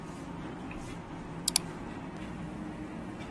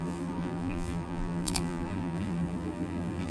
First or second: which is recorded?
first